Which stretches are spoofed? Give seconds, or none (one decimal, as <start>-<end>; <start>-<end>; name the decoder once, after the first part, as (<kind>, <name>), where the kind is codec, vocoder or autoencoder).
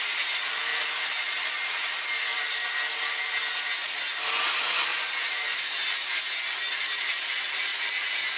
4.9-6.2 (vocoder, BigVGAN v2)